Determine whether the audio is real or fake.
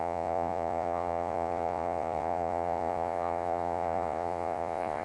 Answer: fake